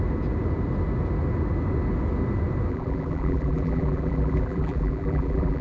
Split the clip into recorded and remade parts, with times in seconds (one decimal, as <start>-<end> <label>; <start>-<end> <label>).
0.0-2.7 recorded; 2.7-5.6 remade